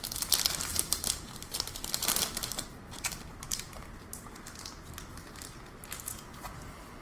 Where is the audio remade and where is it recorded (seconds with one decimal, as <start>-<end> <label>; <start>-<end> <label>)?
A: 0.0-0.7 recorded; 0.7-4.9 remade; 4.9-7.0 recorded